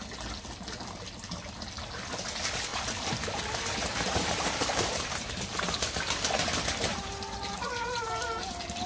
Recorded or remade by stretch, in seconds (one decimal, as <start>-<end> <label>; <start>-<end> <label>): 0.0-2.7 recorded; 2.7-5.3 remade; 5.3-6.9 recorded; 6.9-8.5 remade; 8.5-8.9 recorded